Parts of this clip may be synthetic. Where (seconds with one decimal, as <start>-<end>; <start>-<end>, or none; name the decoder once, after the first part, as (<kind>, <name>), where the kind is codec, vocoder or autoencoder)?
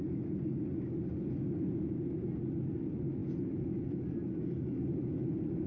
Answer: none